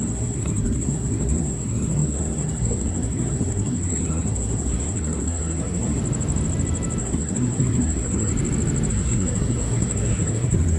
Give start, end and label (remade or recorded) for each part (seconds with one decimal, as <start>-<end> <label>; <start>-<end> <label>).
0.0-6.0 remade; 6.0-7.0 recorded; 7.0-8.3 remade; 8.3-8.9 recorded; 8.9-10.8 remade